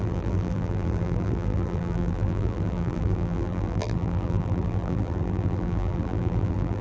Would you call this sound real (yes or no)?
no